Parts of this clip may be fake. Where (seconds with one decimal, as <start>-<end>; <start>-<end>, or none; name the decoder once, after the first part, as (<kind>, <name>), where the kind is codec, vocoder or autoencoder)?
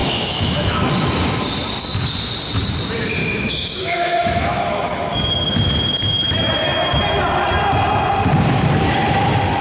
0.0-0.9 (autoencoder, DAC-VAE); 3.2-5.3